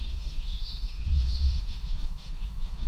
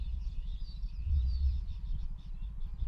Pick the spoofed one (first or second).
first